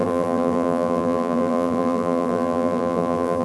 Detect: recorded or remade remade